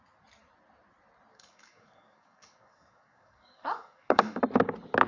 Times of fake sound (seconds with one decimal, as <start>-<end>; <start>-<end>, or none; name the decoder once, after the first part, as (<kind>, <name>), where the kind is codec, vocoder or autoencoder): 1.3-4.4 (codec, DAC)